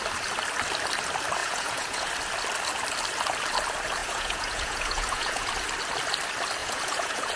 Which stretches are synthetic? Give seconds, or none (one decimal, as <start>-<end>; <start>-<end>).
1.4-2.1; 4.0-5.5; 6.6-7.4